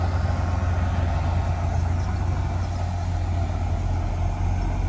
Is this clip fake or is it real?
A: real